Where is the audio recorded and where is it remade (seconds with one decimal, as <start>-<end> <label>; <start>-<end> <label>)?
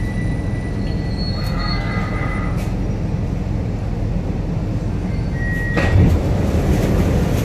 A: 0.0-1.4 recorded; 1.4-1.9 remade; 1.9-7.4 recorded